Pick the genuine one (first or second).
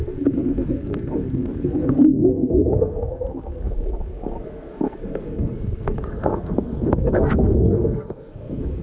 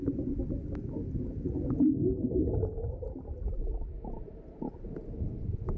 second